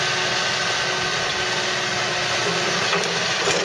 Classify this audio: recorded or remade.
recorded